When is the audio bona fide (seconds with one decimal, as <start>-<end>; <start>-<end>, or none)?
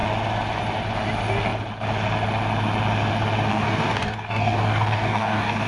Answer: 0.0-3.5